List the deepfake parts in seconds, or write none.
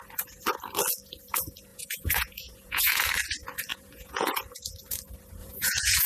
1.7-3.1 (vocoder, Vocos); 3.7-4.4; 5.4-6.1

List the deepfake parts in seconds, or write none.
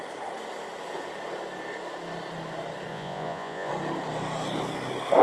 2.9-3.7 (vocoder, Vocos)